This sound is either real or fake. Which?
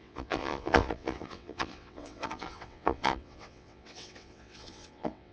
fake